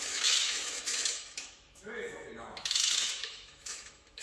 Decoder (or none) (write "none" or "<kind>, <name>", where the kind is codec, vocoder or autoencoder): autoencoder, DAC-VAE